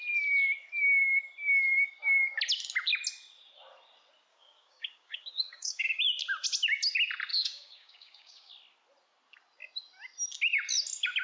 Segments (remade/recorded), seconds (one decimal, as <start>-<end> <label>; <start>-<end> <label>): 0.0-4.3 recorded; 4.3-6.0 remade; 6.0-7.3 recorded; 7.3-8.5 remade; 8.5-11.2 recorded